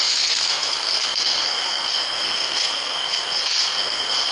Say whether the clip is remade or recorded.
remade